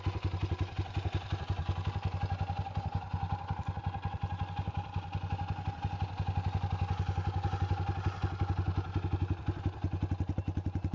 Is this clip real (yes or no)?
yes